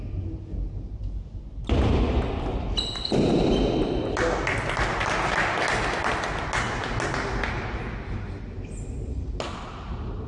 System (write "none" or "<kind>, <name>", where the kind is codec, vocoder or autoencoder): none